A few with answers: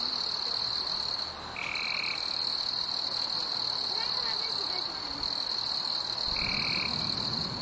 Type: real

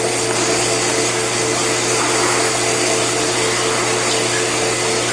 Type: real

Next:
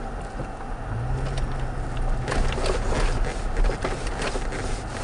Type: real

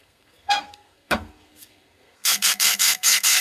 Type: fake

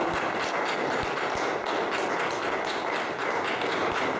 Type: real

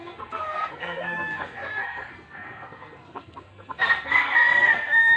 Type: fake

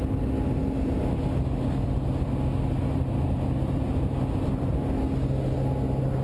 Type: real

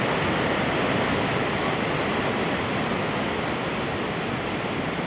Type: real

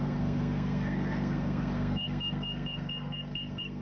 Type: fake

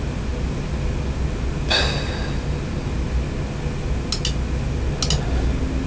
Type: real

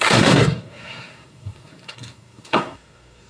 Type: fake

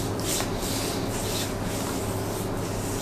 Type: real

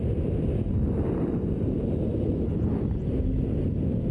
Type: real